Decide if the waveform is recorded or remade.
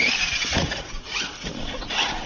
remade